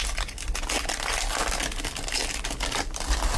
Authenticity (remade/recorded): recorded